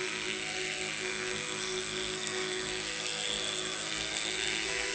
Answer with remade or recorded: remade